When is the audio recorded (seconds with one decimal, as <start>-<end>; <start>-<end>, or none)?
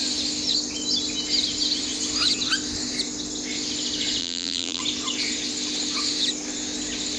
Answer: 0.0-4.2; 4.8-7.2